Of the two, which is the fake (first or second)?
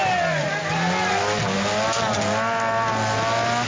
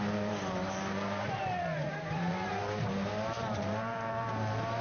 second